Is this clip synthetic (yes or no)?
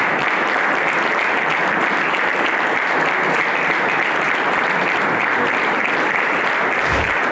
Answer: no